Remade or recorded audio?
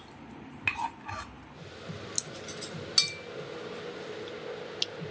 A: recorded